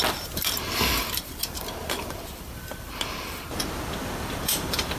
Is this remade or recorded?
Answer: remade